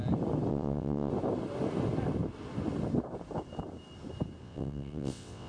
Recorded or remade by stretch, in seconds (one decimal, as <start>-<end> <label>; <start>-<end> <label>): 0.0-0.5 recorded; 0.5-1.1 remade; 1.1-4.4 recorded; 4.4-5.5 remade